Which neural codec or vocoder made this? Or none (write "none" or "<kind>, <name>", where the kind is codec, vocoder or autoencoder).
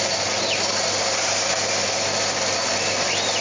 none